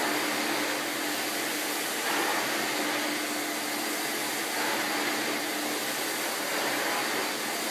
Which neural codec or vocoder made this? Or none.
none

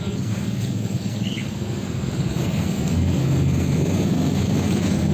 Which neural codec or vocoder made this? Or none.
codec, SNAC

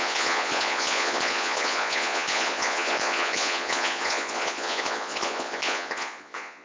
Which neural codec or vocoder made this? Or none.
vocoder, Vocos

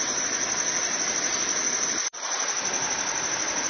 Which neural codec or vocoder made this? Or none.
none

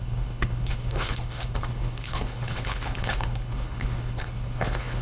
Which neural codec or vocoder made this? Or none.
codec, HILCodec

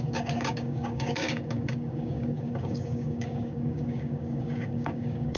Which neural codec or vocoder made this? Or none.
codec, DAC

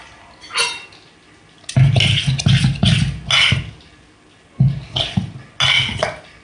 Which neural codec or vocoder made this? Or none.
none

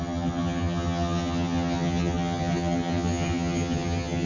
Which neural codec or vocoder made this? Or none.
vocoder, HiFi-GAN